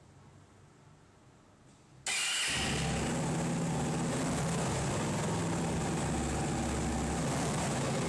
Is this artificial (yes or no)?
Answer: no